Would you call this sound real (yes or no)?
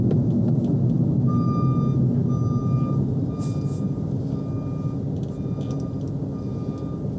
yes